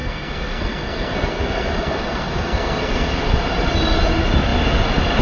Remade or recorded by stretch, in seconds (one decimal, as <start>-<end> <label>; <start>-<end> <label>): 0.0-3.1 remade; 3.1-5.2 recorded